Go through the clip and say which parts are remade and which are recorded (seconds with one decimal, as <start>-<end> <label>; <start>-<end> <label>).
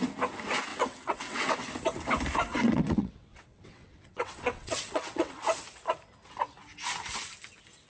0.0-0.7 recorded; 0.7-1.5 remade; 1.5-2.5 recorded; 2.5-5.4 remade; 5.4-7.9 recorded